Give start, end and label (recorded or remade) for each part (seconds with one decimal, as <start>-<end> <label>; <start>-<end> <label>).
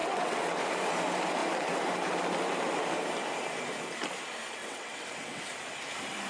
0.0-0.6 remade; 0.6-4.6 recorded; 4.6-5.4 remade; 5.4-6.3 recorded